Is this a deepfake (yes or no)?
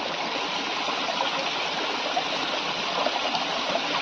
no